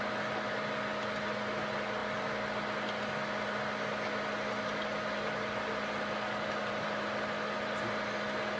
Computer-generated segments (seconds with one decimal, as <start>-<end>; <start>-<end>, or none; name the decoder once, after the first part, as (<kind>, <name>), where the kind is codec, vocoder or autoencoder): none